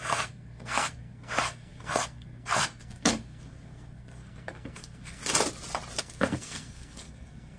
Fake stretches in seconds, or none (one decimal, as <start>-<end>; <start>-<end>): 0.0-5.2; 6.0-7.6